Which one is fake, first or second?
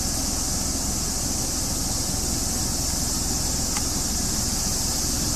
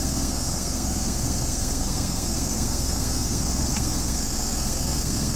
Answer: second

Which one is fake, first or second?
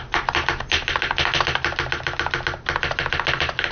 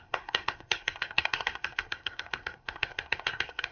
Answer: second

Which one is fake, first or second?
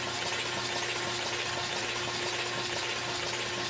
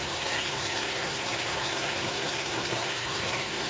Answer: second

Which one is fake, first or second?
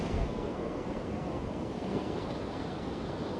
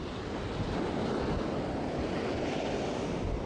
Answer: first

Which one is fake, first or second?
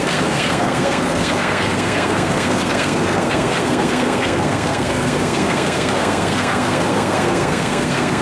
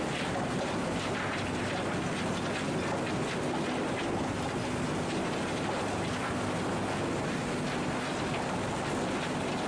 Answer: first